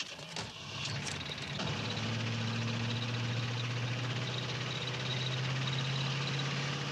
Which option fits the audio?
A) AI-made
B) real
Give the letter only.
B